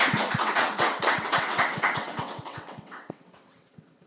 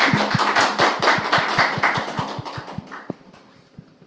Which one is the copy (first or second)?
first